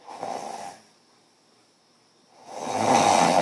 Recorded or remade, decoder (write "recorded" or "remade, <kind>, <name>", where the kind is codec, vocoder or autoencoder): recorded